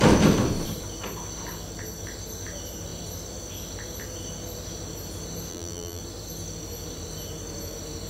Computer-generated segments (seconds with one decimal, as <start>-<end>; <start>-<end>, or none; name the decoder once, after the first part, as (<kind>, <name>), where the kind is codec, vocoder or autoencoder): 5.5-6.0 (vocoder, BigVGAN v2)